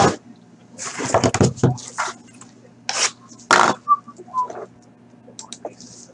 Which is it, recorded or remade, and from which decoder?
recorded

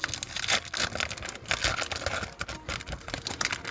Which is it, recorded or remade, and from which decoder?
recorded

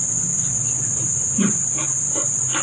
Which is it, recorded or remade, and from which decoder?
recorded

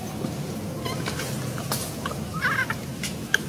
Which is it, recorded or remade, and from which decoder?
recorded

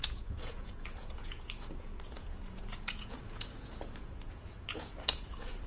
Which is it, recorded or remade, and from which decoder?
remade, vocoder, Vocos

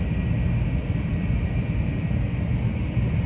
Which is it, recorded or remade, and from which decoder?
recorded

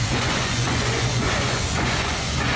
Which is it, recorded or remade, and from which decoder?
remade, vocoder, Vocos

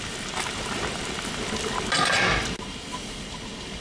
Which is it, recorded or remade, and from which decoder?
recorded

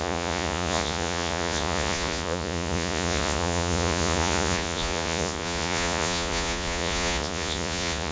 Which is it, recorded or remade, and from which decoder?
remade, vocoder, Vocos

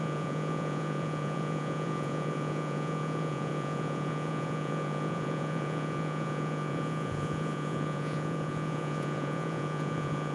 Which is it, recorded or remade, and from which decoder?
remade, vocoder, Vocos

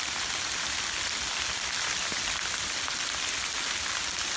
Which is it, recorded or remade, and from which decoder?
recorded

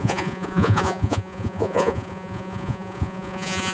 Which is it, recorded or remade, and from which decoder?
remade, vocoder, Vocos